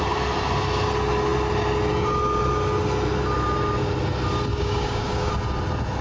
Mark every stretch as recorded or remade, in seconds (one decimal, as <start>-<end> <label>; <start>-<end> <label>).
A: 0.0-4.5 recorded; 4.5-5.3 remade; 5.3-6.0 recorded